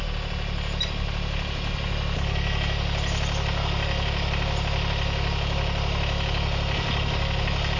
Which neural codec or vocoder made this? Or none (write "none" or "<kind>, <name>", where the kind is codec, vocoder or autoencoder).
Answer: none